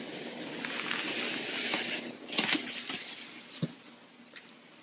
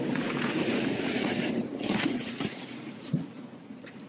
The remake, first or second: second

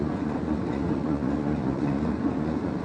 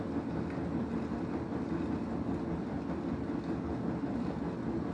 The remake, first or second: first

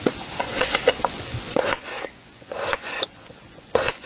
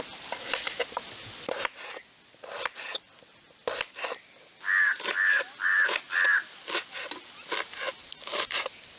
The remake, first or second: first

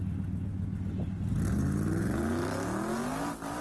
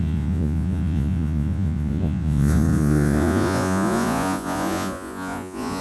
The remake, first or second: second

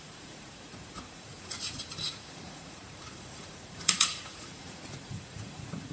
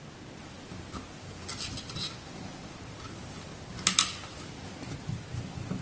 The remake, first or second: first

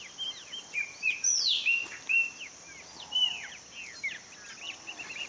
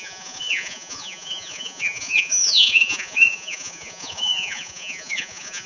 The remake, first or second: second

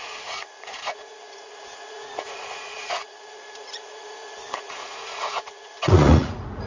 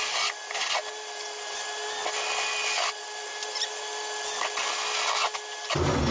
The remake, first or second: first